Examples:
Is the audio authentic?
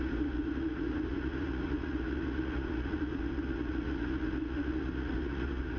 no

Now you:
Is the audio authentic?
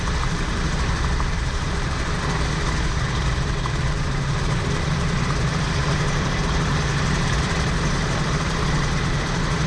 no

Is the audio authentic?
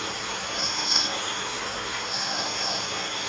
no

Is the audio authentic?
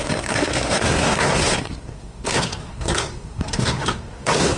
no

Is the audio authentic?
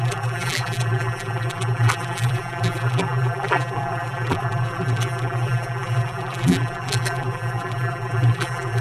no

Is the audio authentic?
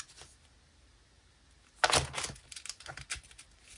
yes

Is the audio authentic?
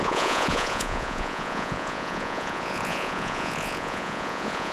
no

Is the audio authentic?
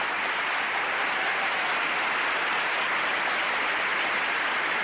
yes